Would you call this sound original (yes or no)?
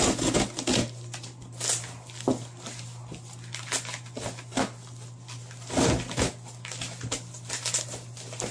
yes